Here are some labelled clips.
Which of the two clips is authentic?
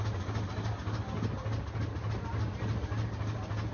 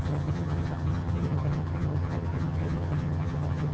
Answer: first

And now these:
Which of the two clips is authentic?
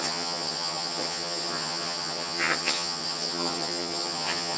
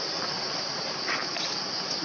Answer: second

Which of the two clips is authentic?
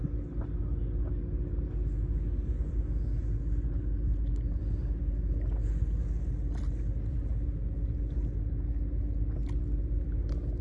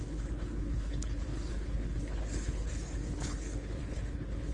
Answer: first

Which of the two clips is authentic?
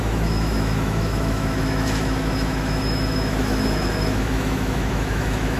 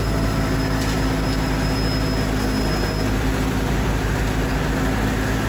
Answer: second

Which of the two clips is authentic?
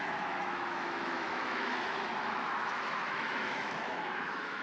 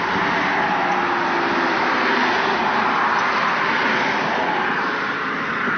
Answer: second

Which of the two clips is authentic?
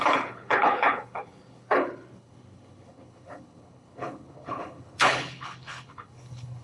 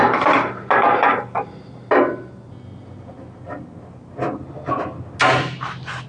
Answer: second